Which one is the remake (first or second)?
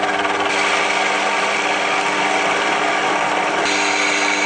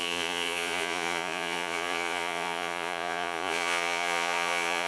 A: second